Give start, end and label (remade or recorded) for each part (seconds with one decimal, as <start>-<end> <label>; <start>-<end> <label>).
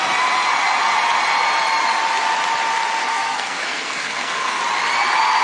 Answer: 0.0-3.0 recorded; 3.0-4.6 remade; 4.6-5.4 recorded